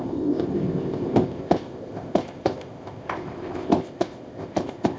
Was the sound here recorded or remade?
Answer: remade